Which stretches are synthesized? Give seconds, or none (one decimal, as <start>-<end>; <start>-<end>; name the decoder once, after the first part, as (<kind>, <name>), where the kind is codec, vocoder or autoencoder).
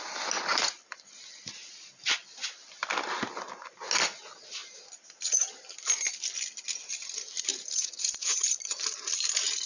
7.5-8.5 (vocoder, Vocos)